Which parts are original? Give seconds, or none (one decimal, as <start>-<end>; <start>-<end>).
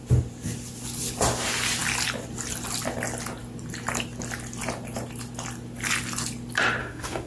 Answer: 0.0-6.8